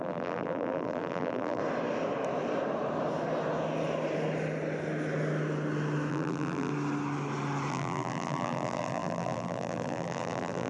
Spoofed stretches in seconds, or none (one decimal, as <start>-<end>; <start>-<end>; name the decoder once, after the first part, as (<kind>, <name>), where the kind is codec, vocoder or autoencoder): 0.0-1.6 (vocoder, BigVGAN v2); 6.1-6.7; 7.7-10.7